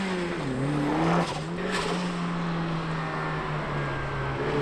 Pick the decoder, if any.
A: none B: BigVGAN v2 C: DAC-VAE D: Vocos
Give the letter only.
A